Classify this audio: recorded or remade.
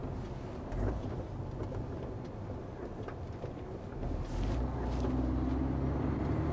recorded